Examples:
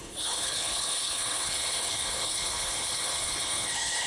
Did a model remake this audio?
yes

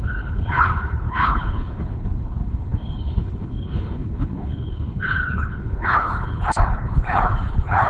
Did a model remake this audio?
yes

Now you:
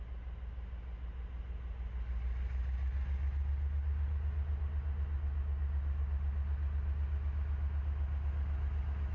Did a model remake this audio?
no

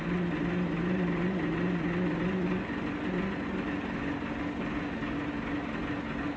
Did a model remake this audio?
no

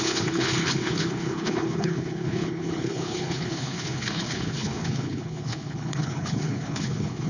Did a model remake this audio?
yes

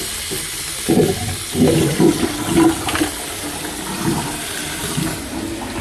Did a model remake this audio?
no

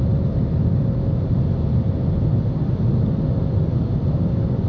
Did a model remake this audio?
no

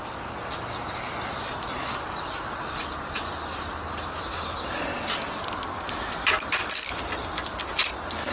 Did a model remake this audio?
no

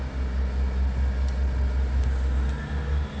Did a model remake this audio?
no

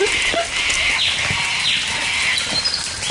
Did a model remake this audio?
no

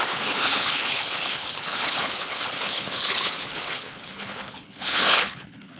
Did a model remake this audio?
yes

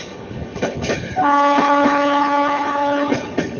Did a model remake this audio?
yes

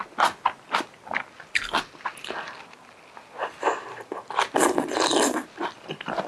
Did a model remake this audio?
no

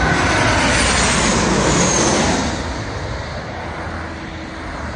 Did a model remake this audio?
no